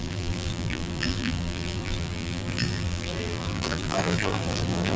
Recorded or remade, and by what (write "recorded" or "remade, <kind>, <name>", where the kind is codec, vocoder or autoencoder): remade, vocoder, BigVGAN v2